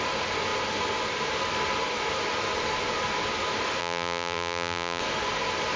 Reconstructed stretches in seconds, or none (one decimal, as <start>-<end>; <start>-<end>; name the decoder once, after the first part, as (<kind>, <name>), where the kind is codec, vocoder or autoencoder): 3.8-5.0 (vocoder, BigVGAN v2)